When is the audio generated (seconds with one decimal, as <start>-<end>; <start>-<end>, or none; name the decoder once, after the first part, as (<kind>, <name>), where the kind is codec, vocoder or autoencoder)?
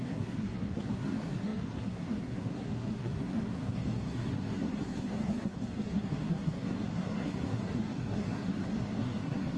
0.0-9.6 (codec, SNAC)